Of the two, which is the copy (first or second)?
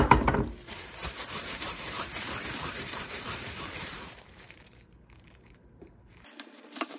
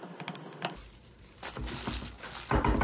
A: first